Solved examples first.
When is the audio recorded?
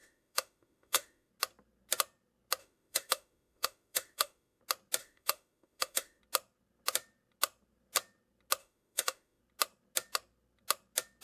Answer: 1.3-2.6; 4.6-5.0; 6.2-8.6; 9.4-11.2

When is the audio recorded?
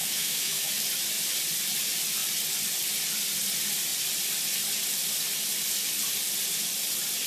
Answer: 0.7-7.3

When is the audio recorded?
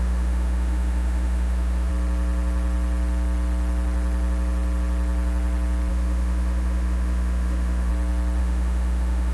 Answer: 1.9-5.9; 7.9-8.4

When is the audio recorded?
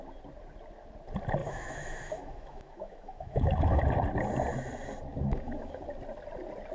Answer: 0.0-1.4; 3.8-5.1; 5.8-6.7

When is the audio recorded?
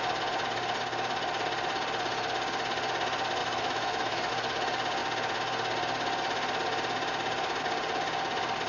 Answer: 0.0-3.4; 4.3-8.7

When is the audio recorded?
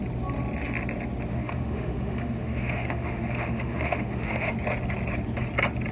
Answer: 0.0-1.3; 4.5-5.9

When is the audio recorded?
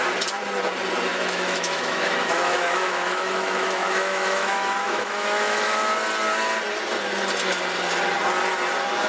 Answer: 0.0-1.1; 5.9-9.1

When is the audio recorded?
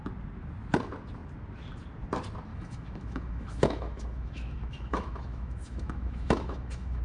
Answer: 0.0-2.5